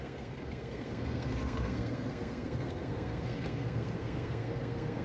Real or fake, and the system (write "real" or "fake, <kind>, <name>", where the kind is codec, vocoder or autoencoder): fake, codec, SNAC